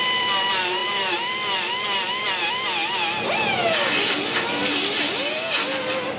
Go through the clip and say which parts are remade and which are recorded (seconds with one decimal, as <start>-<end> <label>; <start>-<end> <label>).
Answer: 0.0-6.2 remade